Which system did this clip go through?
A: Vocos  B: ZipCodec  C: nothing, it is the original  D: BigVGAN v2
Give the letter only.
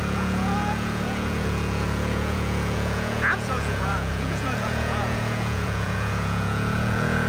A